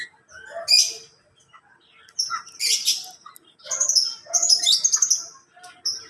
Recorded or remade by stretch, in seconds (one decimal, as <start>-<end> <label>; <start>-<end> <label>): 0.0-6.1 recorded